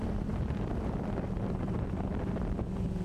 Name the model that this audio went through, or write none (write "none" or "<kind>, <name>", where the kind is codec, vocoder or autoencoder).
vocoder, BigVGAN v2